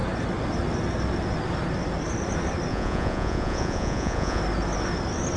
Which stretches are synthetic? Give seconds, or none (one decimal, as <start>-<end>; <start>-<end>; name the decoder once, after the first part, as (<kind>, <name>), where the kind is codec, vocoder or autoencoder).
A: 2.7-4.4 (vocoder, Vocos)